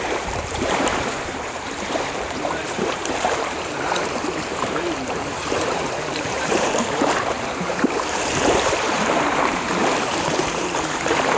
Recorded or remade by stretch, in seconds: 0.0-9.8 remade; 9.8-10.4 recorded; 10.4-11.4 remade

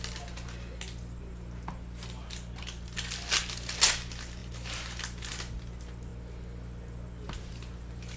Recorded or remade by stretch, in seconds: 0.0-8.2 recorded

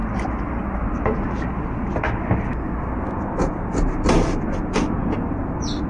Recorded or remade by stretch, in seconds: 0.0-5.9 recorded